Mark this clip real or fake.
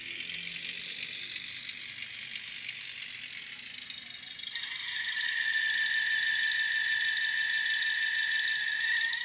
real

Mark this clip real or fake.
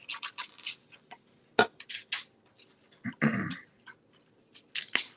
real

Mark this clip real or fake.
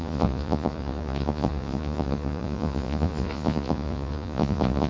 fake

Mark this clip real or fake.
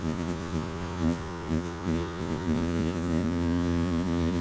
fake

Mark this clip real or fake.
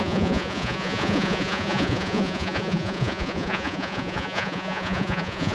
fake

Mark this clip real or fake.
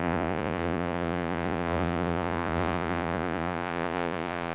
fake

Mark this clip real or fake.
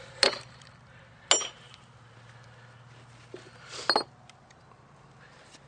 real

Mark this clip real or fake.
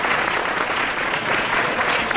fake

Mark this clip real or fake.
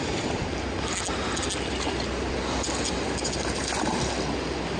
real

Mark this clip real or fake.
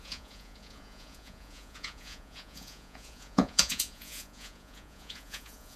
fake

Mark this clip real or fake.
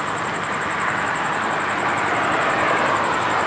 real